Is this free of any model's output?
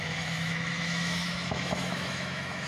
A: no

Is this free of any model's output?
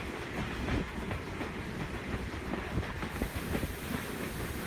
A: yes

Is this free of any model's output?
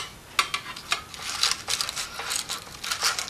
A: yes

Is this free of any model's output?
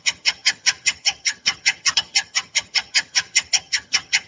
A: no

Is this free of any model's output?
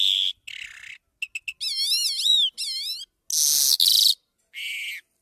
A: yes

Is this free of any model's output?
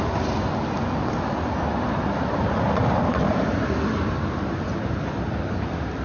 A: yes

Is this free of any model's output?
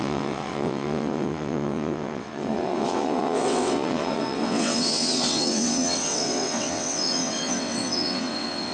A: no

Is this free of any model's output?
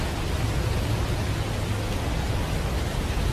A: yes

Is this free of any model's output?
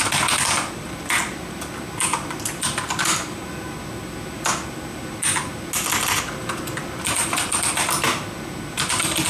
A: yes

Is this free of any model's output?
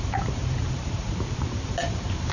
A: no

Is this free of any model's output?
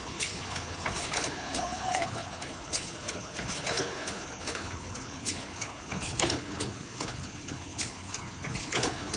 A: no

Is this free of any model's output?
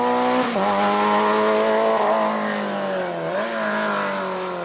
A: yes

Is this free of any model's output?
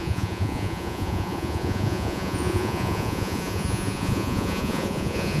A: no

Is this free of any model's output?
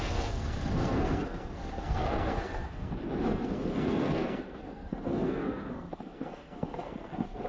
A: no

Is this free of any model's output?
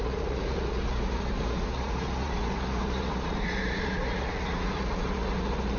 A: no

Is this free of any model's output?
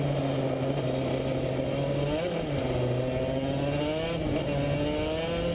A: yes